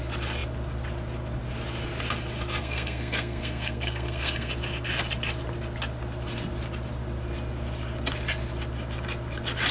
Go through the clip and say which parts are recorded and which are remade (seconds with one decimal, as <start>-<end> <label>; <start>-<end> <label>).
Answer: 0.0-2.6 recorded; 2.6-4.5 remade; 4.5-9.7 recorded